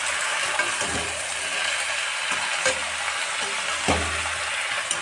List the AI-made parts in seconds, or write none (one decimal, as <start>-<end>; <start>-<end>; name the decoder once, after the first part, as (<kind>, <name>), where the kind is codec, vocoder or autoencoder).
none